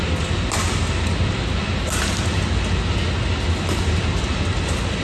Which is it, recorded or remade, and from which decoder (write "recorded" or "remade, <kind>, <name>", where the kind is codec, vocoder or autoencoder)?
recorded